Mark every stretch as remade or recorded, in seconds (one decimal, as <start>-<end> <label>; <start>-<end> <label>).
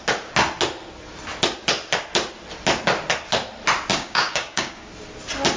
0.0-3.9 recorded; 3.9-4.9 remade; 4.9-5.6 recorded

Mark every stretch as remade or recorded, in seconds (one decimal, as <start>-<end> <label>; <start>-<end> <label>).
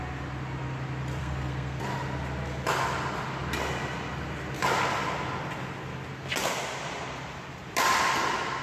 0.0-1.2 recorded; 1.2-1.8 remade; 1.8-8.6 recorded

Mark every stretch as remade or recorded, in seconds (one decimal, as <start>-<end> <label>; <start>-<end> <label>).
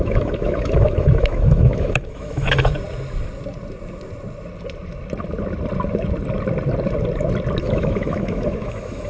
0.0-2.7 remade; 2.7-7.6 recorded; 7.6-9.1 remade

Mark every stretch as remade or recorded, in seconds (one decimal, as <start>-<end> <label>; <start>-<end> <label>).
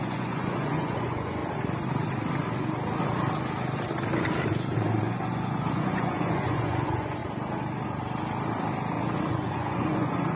0.0-1.4 remade; 1.4-4.6 recorded; 4.6-7.2 remade; 7.2-9.3 recorded; 9.3-10.4 remade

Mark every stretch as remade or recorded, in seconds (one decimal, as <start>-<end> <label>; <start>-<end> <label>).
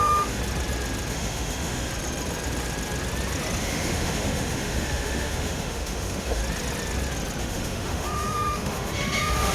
0.0-0.4 remade; 0.4-1.1 recorded; 1.1-1.9 remade; 1.9-3.6 recorded; 3.6-6.4 remade; 6.4-7.4 recorded; 7.4-9.5 remade